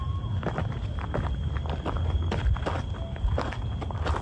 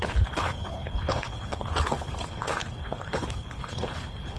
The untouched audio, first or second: first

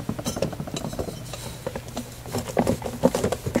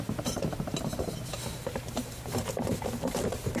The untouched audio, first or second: first